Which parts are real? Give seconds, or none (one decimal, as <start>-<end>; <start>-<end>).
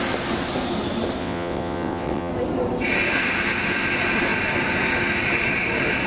0.0-1.2; 2.3-6.1